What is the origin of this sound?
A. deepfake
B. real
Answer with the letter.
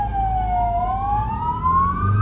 B